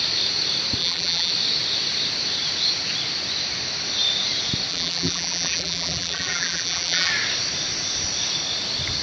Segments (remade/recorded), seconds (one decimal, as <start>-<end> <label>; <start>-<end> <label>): 0.0-0.8 recorded; 0.8-1.3 remade; 1.3-4.7 recorded; 4.7-7.1 remade; 7.1-9.0 recorded